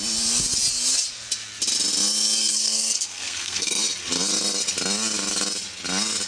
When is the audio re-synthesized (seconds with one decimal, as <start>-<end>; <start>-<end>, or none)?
2.4-3.8